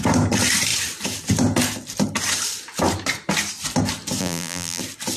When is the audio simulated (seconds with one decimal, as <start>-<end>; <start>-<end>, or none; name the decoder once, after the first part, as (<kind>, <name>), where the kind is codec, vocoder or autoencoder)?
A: 4.2-4.8 (vocoder, BigVGAN v2)